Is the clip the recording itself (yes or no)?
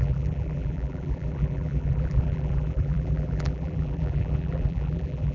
no